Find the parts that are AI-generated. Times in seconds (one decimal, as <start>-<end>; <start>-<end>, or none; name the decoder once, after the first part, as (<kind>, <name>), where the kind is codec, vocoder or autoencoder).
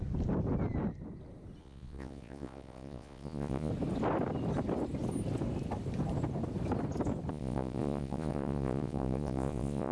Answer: 1.6-3.7 (vocoder, Vocos); 7.3-9.9